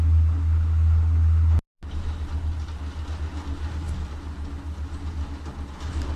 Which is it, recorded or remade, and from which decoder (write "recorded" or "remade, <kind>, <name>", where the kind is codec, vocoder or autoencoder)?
recorded